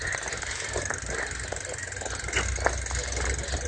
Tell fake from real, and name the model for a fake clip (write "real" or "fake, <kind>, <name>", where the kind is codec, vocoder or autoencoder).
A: real